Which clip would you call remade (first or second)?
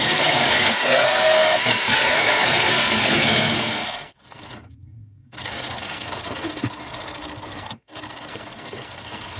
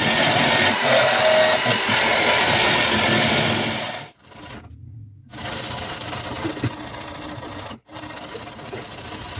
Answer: first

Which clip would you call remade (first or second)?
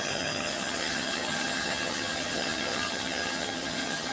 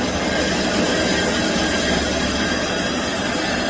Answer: first